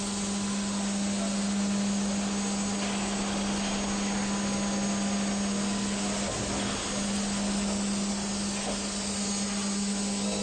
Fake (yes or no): no